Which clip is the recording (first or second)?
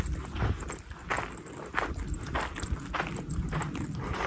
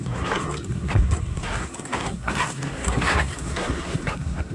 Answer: first